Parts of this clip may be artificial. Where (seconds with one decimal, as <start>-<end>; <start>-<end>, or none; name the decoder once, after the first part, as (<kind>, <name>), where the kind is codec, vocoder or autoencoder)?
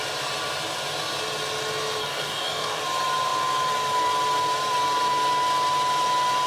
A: 2.0-2.8 (codec, DAC)